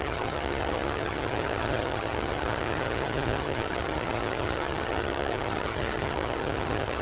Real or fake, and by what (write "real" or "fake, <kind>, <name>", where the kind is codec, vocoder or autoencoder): fake, vocoder, HiFi-GAN